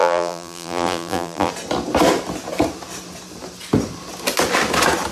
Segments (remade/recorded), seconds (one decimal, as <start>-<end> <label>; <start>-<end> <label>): 0.0-1.5 remade; 1.5-5.1 recorded